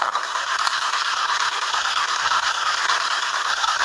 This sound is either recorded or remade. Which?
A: remade